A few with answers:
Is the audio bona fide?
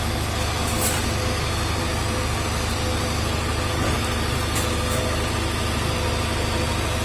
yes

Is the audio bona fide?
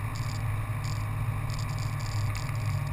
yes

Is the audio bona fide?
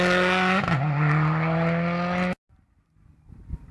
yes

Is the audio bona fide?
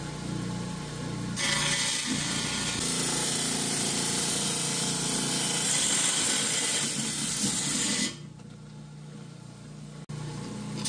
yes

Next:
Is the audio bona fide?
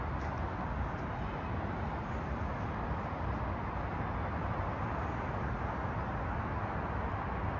yes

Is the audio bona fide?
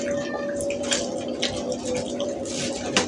yes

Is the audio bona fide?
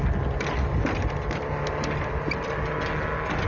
yes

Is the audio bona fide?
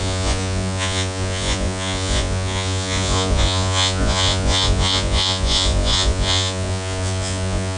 no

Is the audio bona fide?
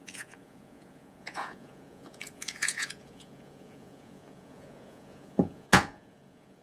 no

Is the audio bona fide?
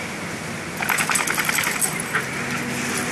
yes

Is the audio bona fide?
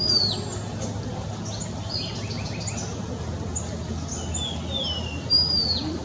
yes